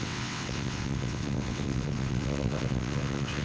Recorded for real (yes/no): no